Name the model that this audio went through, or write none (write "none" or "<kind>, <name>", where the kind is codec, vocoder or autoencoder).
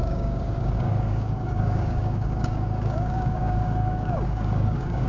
codec, DAC